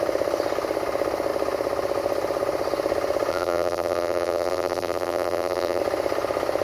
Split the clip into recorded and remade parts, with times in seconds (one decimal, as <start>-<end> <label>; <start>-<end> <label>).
0.0-3.3 recorded; 3.3-5.8 remade; 5.8-6.6 recorded